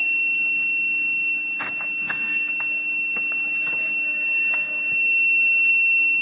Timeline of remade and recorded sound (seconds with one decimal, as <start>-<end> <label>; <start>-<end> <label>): 0.0-2.0 recorded; 2.0-2.5 remade; 2.5-6.2 recorded